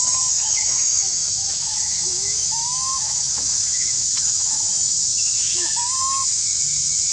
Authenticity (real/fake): fake